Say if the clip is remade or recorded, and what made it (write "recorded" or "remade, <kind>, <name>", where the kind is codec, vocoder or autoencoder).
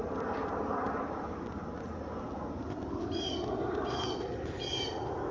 recorded